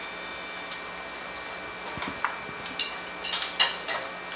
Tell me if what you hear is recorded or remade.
recorded